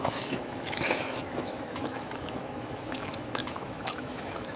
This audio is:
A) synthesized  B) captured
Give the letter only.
A